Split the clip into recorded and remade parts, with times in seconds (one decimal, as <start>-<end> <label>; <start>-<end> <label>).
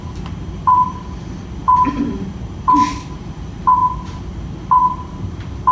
0.0-5.7 recorded